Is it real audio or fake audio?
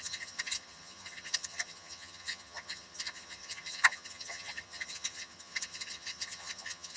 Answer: fake